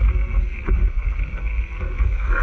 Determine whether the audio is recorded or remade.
remade